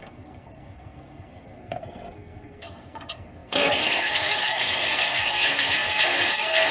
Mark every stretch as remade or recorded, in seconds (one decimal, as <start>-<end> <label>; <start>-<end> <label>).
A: 0.0-6.7 remade